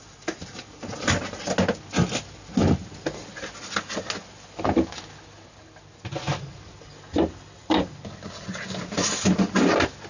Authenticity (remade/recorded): recorded